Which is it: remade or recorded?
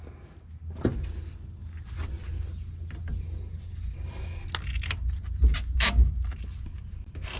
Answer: recorded